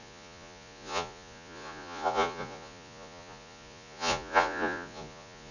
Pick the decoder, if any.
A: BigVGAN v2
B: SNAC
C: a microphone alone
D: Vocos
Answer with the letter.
D